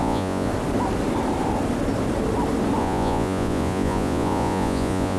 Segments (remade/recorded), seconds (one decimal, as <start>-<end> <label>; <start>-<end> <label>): 0.0-0.5 remade; 0.5-2.8 recorded; 2.8-5.2 remade